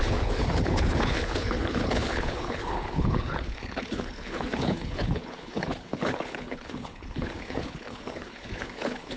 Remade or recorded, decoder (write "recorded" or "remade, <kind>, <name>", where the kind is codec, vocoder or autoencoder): remade, codec, HILCodec